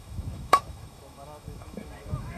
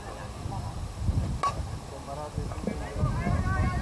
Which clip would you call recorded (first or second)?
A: second